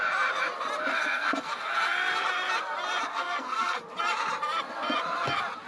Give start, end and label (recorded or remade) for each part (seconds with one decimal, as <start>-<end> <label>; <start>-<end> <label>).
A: 0.0-0.9 recorded; 0.9-1.7 remade; 1.7-3.1 recorded; 3.1-3.8 remade; 3.8-5.7 recorded